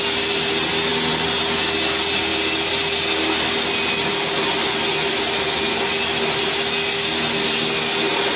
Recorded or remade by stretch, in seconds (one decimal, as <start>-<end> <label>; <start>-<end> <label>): 0.0-8.4 recorded